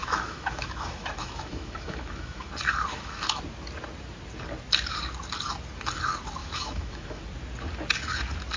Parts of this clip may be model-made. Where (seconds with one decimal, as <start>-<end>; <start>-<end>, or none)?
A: 0.0-2.5; 2.9-3.4; 6.4-7.2